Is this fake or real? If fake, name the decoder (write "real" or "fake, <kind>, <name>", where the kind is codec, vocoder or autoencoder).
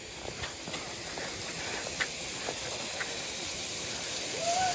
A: real